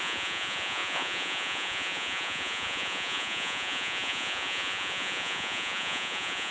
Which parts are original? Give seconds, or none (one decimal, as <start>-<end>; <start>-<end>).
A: none